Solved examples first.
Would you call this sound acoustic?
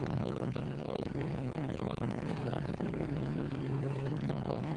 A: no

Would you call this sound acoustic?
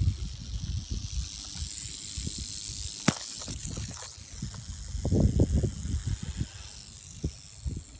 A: yes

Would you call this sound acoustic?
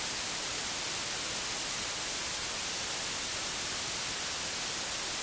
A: yes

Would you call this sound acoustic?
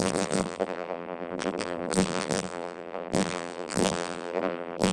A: no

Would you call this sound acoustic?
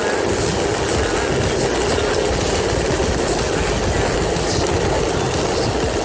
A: yes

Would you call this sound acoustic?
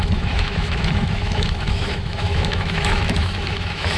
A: no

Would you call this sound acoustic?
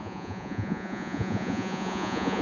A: no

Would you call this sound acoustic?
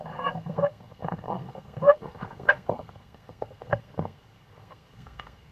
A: no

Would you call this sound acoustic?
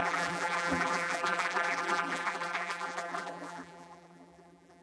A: no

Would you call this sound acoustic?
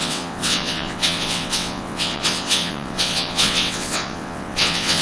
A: no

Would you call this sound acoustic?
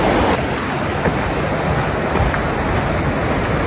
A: yes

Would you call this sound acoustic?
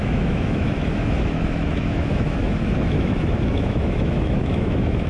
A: no